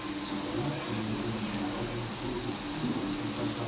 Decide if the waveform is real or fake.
real